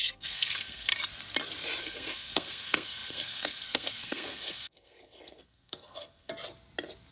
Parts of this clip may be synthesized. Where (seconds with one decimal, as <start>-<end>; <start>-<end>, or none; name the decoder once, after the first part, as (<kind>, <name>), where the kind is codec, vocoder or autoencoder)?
0.0-0.9 (codec, SNAC); 1.8-6.3